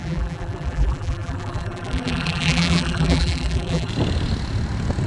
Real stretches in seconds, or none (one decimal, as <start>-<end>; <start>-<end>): 3.9-5.1